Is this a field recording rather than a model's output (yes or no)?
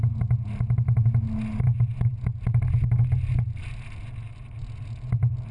yes